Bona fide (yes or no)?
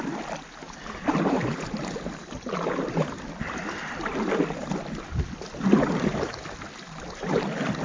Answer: yes